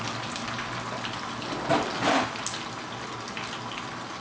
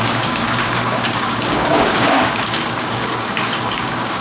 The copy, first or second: second